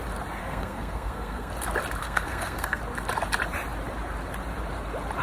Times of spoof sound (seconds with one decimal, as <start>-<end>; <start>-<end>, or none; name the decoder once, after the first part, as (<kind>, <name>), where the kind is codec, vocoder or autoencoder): 0.4-1.5 (codec, SNAC); 2.0-2.8